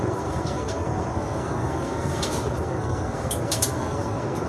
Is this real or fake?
fake